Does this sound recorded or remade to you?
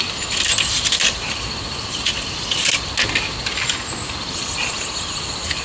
recorded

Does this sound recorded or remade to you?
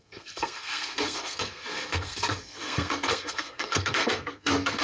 remade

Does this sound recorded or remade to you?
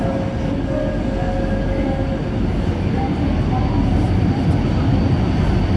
recorded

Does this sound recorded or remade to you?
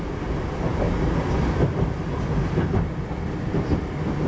recorded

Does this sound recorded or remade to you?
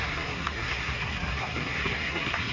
remade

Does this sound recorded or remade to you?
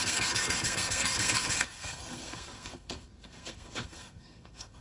remade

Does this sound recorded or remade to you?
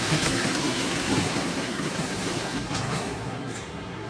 remade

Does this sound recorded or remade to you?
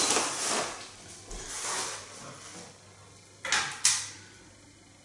recorded